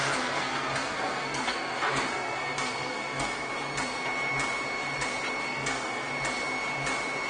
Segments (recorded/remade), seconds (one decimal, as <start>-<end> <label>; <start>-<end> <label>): 0.0-3.5 remade; 3.5-5.5 recorded; 5.5-6.1 remade; 6.1-7.3 recorded